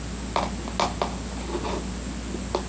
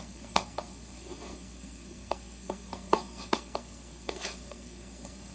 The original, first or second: first